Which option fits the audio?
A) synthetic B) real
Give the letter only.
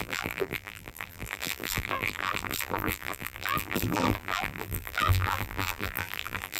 A